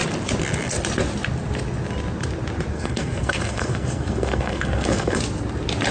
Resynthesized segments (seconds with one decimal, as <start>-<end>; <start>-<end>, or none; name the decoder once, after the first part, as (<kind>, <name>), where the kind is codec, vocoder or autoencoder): 2.7-5.2 (codec, SNAC)